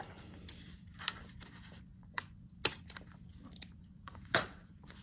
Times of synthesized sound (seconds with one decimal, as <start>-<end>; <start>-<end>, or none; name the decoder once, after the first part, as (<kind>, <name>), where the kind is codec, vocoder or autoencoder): 1.9-2.4 (vocoder, Vocos); 3.8-5.0